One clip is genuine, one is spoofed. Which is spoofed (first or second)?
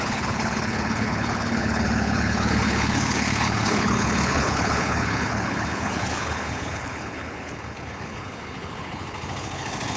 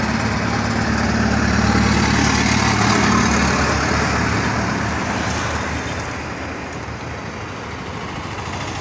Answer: first